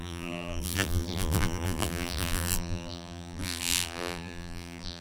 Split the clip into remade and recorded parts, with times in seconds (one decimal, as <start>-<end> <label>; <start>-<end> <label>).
0.0-5.0 remade